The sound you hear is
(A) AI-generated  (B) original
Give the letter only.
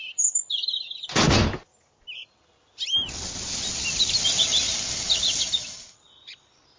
B